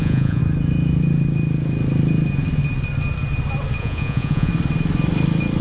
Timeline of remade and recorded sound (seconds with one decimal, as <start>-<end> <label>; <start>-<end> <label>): 0.0-0.4 remade; 0.4-3.8 recorded; 3.8-4.5 remade; 4.5-5.6 recorded